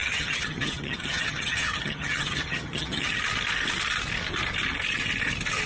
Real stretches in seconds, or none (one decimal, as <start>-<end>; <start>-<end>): 3.2-5.7